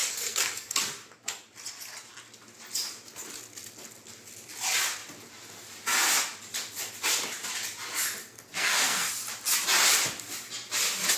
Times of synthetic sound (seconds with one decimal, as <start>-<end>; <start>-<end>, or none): 0.0-0.8; 8.2-9.1

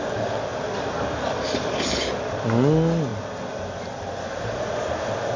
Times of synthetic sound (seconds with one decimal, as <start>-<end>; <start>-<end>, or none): none

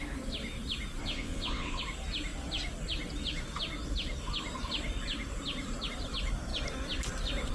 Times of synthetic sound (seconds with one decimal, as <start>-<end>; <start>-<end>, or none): 1.0-1.8

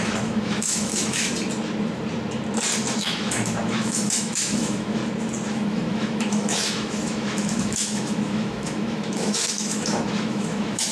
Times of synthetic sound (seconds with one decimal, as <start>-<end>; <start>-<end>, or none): 0.0-1.3; 2.9-5.0; 5.5-10.9

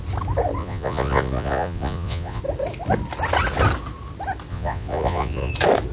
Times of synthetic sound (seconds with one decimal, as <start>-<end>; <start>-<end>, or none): 0.6-2.4; 4.5-5.5

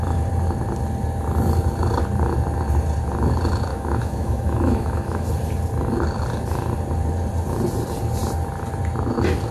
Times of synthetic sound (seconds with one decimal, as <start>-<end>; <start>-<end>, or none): 3.7-5.3